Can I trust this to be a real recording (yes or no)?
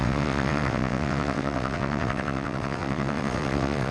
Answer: no